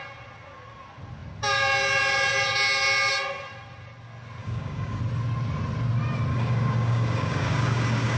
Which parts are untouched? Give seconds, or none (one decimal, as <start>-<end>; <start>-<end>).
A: 0.0-4.4; 5.0-6.3